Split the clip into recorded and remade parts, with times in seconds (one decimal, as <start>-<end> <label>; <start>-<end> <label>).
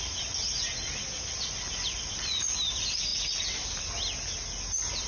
0.0-5.1 recorded